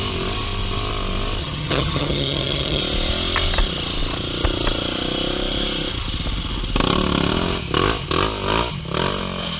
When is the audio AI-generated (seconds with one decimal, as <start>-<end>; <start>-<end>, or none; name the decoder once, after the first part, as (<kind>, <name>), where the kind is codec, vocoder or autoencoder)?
1.4-2.8 (vocoder, HiFi-GAN)